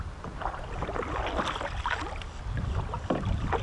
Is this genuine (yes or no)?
yes